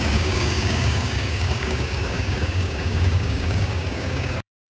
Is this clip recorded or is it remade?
remade